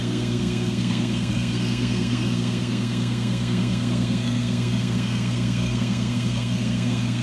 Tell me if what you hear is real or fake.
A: fake